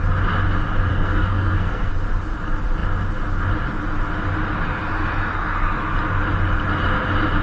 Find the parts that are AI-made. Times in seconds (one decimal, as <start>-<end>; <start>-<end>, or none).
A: 0.9-1.9

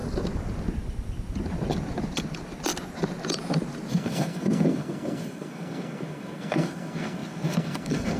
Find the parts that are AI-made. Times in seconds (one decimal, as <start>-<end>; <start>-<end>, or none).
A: 3.9-8.2

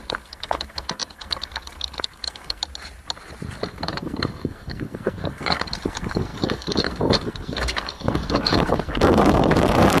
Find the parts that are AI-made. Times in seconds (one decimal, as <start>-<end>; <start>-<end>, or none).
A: 0.0-2.6; 3.7-10.0

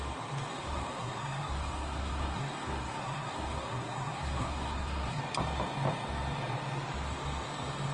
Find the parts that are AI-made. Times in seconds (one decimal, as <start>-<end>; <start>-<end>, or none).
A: 0.5-5.2